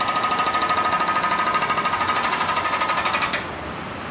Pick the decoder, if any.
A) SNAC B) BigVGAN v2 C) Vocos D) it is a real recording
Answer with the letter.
D